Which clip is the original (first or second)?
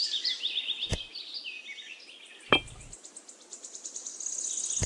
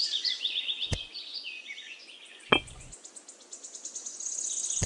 first